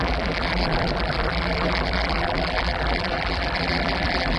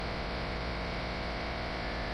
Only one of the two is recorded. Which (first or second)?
second